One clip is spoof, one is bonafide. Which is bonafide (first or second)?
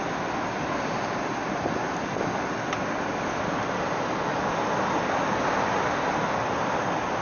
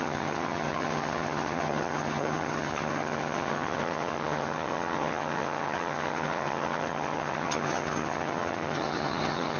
first